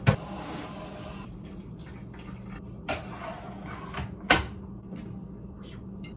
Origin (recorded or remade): recorded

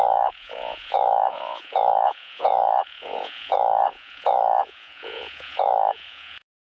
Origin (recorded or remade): remade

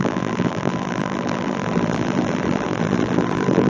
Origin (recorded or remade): remade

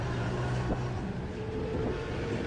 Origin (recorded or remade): recorded